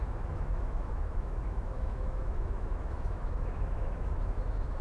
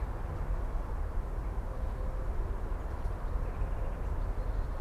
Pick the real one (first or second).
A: second